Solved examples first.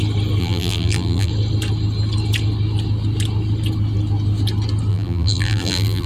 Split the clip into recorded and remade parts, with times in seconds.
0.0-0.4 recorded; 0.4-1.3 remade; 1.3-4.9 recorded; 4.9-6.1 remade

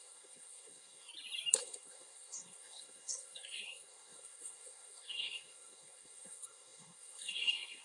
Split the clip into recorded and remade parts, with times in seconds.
0.0-1.1 remade; 1.1-1.6 recorded; 1.6-7.8 remade

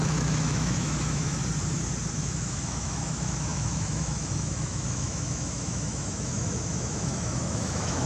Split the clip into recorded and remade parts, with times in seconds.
0.0-1.4 remade; 1.4-2.1 recorded; 2.1-8.1 remade

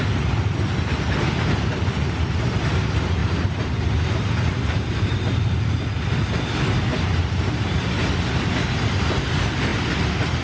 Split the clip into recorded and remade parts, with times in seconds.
0.0-3.2 recorded; 3.2-5.6 remade; 5.6-6.9 recorded; 6.9-7.6 remade; 7.6-10.4 recorded

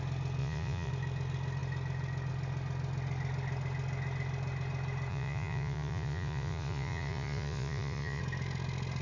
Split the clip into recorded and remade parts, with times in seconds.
0.0-0.4 recorded; 0.4-0.9 remade; 0.9-5.1 recorded; 5.1-8.2 remade; 8.2-9.0 recorded